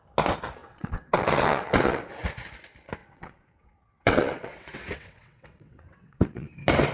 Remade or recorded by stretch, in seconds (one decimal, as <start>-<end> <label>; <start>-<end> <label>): 0.0-0.6 recorded; 0.6-2.0 remade; 2.0-3.0 recorded; 3.0-6.5 remade; 6.5-6.9 recorded